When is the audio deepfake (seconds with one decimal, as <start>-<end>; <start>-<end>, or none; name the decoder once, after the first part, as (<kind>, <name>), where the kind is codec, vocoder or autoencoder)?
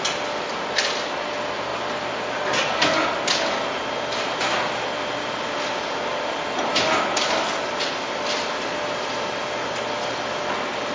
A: 1.7-2.3 (vocoder, BigVGAN v2); 6.7-9.4